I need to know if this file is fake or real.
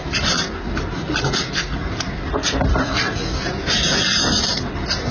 fake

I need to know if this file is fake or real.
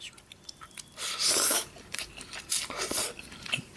real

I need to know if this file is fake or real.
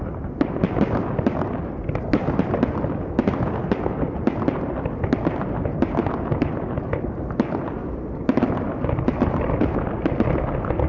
real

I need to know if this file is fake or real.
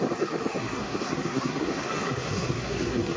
fake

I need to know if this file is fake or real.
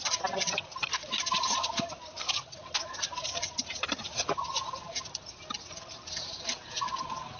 real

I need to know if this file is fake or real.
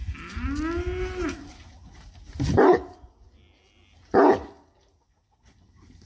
real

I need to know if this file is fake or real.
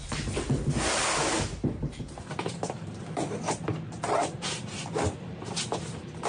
fake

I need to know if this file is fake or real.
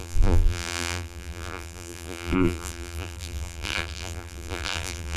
fake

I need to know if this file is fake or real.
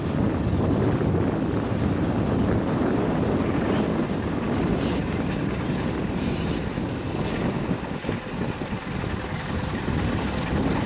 real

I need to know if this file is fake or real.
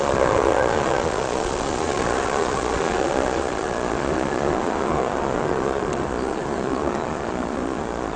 fake